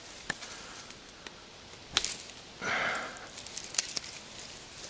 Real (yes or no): yes